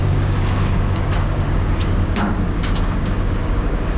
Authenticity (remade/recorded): remade